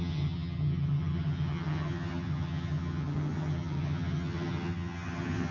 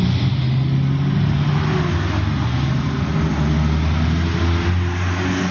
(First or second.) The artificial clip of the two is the first